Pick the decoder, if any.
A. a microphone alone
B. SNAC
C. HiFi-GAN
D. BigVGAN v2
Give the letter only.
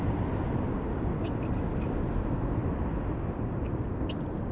A